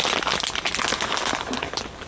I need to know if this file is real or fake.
real